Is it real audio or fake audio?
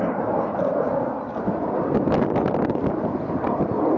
real